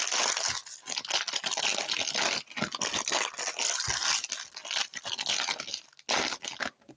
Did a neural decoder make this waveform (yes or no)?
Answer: no